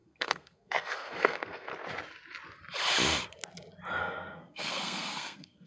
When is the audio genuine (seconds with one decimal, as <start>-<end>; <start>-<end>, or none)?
1.7-4.0